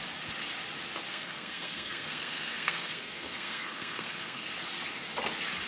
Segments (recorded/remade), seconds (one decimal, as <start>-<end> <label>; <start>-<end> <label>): 0.0-1.1 recorded; 1.1-4.5 remade; 4.5-5.7 recorded